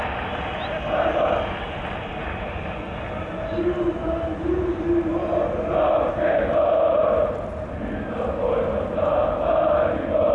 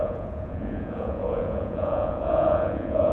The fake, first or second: second